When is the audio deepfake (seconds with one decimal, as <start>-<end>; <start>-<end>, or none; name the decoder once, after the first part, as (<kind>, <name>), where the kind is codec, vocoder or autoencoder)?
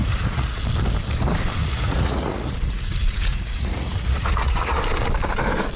0.0-0.6 (vocoder, Vocos); 1.6-4.8